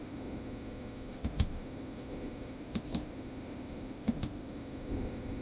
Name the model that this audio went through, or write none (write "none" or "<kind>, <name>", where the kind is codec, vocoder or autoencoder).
autoencoder, DAC-VAE